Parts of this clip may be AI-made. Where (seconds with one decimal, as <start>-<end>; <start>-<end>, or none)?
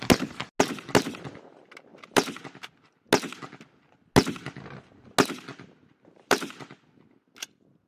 1.9-2.4; 5.5-6.5